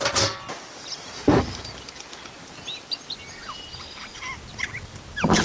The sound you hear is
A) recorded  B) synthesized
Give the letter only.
A